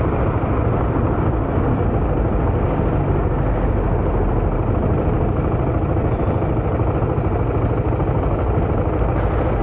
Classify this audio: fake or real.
real